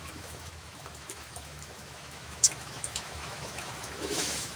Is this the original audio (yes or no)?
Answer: no